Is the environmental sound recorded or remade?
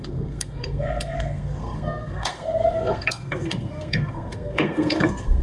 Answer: remade